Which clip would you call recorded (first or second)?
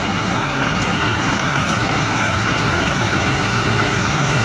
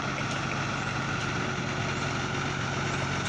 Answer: second